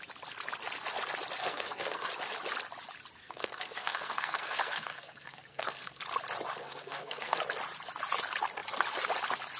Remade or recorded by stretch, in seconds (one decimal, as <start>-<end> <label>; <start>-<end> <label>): 0.0-1.4 recorded; 1.4-2.1 remade; 2.1-3.2 recorded; 3.2-6.0 remade; 6.0-6.6 recorded; 6.6-7.4 remade; 7.4-9.6 recorded